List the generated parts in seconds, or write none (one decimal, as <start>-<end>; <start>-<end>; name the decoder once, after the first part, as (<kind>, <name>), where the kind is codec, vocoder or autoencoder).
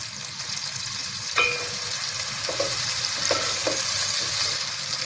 none